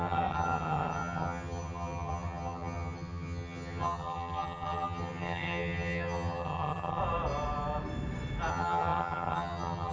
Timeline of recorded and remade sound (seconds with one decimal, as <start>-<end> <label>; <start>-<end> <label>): 0.0-7.0 remade; 7.0-8.5 recorded; 8.5-9.9 remade